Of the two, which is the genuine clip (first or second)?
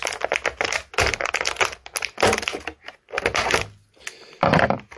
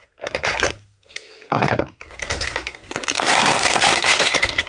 first